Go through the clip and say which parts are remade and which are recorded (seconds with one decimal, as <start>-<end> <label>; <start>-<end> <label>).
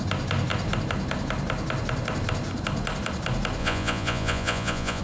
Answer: 0.0-3.6 recorded; 3.6-5.0 remade